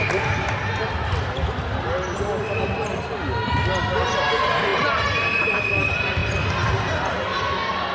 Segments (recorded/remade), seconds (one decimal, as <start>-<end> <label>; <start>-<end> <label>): 0.0-7.9 recorded